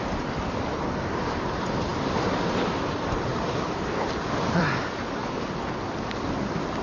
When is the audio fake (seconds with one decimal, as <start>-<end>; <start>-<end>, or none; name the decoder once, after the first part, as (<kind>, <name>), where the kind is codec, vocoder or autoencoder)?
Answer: none